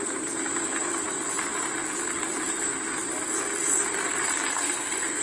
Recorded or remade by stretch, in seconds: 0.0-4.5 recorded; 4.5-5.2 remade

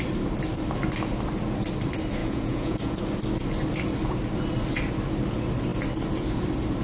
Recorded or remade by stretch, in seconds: 0.0-2.2 recorded; 2.2-3.0 remade; 3.0-6.8 recorded

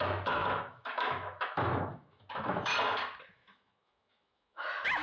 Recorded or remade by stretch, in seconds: 0.0-2.7 remade; 2.7-3.3 recorded; 3.3-5.0 remade

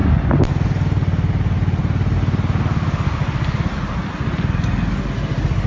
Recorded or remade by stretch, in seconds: 0.0-5.7 recorded

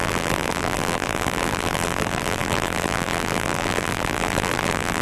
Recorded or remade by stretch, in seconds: 0.0-5.0 remade

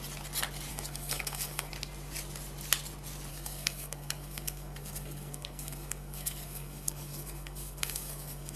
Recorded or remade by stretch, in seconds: 0.0-0.7 recorded; 0.7-1.7 remade; 1.7-3.3 recorded; 3.3-8.6 remade

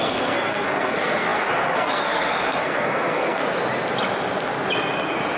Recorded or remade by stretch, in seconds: 0.0-3.4 remade; 3.4-5.4 recorded

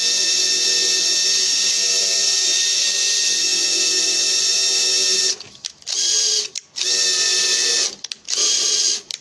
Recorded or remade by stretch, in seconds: 0.0-9.2 recorded